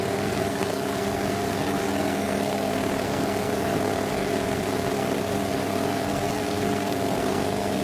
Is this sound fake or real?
fake